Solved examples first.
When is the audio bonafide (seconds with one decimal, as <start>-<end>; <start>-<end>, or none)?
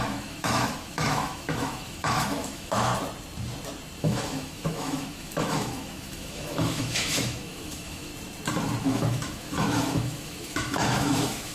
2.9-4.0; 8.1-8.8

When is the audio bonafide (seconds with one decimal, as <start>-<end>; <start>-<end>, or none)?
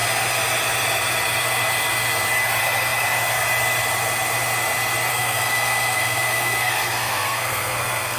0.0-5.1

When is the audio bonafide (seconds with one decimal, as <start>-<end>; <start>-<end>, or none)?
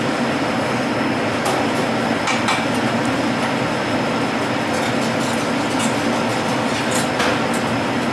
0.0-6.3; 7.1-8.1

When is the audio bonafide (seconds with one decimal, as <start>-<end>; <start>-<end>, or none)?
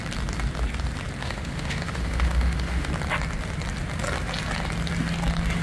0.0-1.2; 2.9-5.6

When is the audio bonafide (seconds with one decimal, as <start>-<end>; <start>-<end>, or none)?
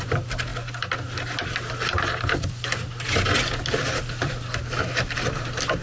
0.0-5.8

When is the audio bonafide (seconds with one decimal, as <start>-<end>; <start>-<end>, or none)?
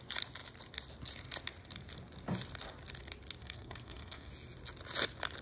0.0-3.4; 4.3-5.4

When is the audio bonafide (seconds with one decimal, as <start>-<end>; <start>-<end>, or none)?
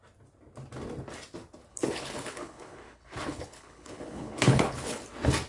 0.0-1.7; 5.0-5.5